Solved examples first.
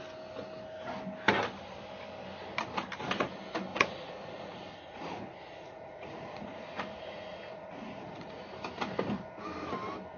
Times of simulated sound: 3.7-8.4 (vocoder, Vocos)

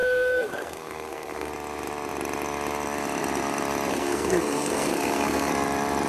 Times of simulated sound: 0.0-1.5 (codec, SNAC); 3.9-5.5